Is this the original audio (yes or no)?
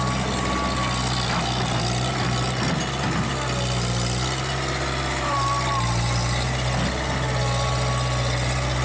yes